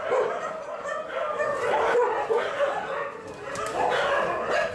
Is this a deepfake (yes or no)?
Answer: no